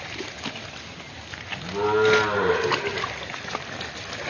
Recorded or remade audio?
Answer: recorded